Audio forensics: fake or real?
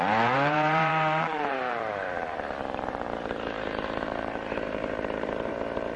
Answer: fake